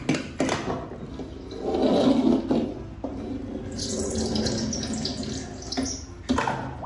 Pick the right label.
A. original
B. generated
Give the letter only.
A